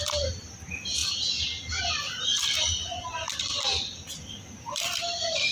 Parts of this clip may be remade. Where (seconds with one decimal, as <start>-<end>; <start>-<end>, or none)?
none